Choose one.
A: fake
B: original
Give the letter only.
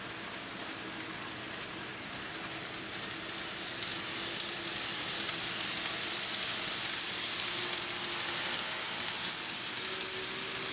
B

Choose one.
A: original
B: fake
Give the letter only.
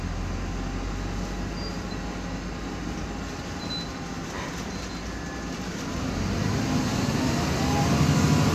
A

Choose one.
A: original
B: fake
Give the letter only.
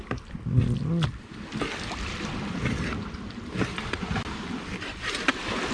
A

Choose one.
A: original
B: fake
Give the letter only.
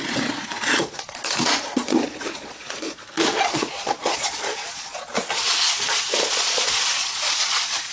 B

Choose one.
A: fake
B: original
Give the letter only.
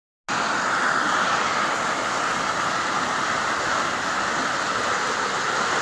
B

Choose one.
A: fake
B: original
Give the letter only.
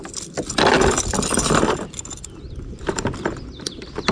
B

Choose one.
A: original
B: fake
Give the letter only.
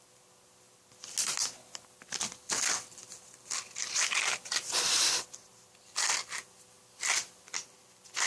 A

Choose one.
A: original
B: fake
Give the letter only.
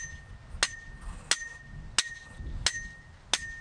A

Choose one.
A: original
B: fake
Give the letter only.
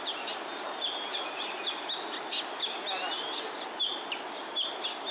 A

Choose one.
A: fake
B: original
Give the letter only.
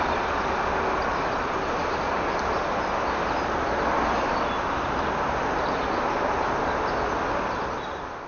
B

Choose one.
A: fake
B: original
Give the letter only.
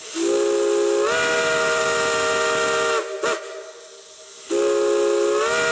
B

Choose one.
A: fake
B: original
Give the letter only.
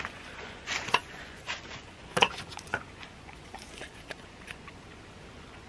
A